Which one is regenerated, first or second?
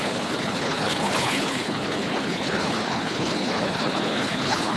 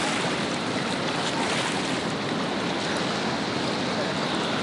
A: first